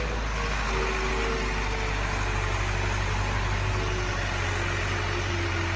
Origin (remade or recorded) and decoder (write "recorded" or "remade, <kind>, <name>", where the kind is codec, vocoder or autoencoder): recorded